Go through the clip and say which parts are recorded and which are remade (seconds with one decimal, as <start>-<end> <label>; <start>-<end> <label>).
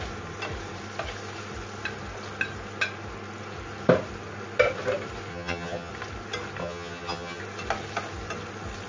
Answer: 0.0-5.3 recorded; 5.3-5.9 remade; 5.9-6.6 recorded; 6.6-7.4 remade; 7.4-8.9 recorded